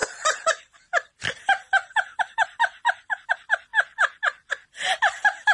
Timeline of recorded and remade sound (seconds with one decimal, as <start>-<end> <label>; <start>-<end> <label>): 0.0-3.3 remade; 3.3-5.5 recorded